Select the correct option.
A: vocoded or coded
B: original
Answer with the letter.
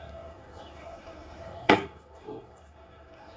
A